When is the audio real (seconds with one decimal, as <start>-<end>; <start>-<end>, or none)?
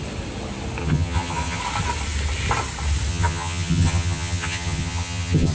0.0-0.8; 1.6-3.1